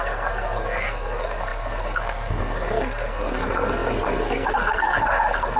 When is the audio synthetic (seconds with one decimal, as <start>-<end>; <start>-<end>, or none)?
0.0-5.6